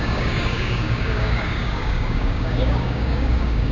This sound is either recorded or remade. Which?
remade